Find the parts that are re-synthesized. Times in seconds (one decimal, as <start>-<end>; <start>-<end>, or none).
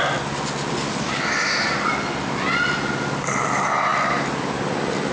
none